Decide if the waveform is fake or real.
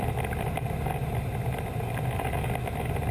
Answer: real